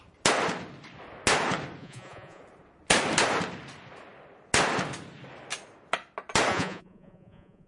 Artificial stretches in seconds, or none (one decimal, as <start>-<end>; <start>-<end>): 1.8-2.4; 6.5-7.7